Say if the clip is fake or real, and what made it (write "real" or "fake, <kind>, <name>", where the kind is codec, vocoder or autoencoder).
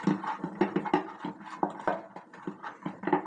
real